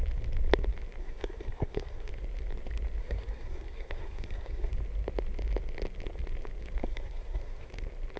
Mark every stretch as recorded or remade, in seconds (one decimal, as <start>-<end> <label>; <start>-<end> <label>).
0.0-1.0 recorded; 1.0-2.1 remade; 2.1-3.0 recorded; 3.0-4.7 remade; 4.7-6.8 recorded; 6.8-7.7 remade; 7.7-8.2 recorded

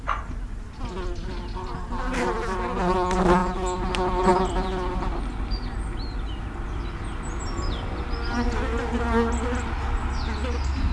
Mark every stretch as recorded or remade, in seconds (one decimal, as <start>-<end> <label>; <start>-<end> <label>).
0.0-10.9 recorded

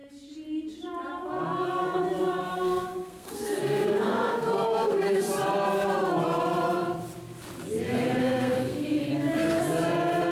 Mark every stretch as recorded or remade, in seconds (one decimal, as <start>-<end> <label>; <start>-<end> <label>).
0.0-2.5 recorded; 2.5-5.2 remade; 5.2-8.2 recorded; 8.2-9.6 remade; 9.6-10.3 recorded

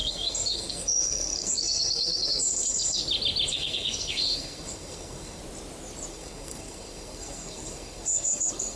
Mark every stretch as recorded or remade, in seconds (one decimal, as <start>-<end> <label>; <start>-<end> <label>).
0.0-3.0 remade; 3.0-3.5 recorded; 3.5-5.4 remade; 5.4-6.1 recorded; 6.1-8.8 remade